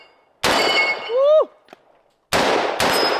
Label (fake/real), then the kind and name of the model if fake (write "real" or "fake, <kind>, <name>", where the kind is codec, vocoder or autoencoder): real